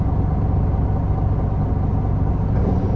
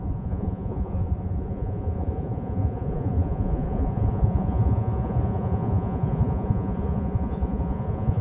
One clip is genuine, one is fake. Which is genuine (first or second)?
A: first